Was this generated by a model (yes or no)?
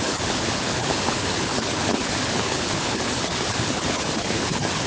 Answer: yes